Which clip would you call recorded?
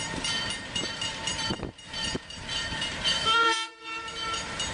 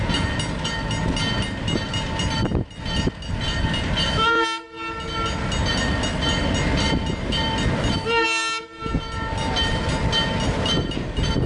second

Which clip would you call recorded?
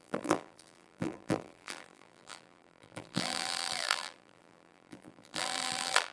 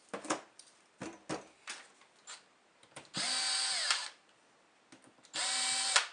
second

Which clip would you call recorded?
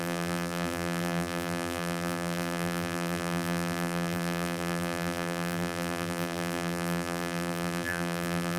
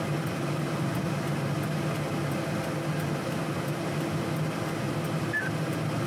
second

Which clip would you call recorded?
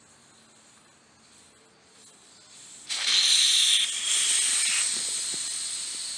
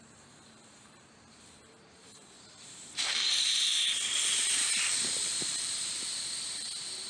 first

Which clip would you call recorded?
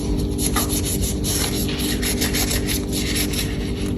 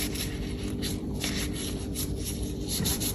first